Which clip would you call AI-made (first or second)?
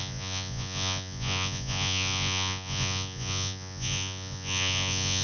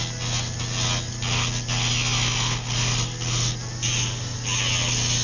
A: first